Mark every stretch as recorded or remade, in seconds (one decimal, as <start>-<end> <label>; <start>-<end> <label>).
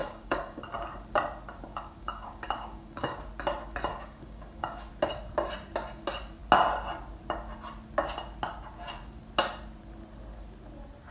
0.0-0.6 remade; 0.6-1.7 recorded; 1.7-3.2 remade; 3.2-3.9 recorded; 3.9-4.9 remade; 4.9-11.1 recorded